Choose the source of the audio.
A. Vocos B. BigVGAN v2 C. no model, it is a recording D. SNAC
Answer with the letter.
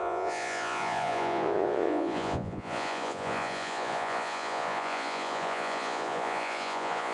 A